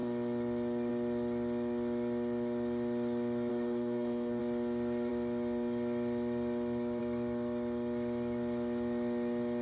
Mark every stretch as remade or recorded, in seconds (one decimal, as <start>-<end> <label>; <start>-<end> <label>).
0.0-3.5 recorded; 3.5-4.4 remade; 4.4-9.6 recorded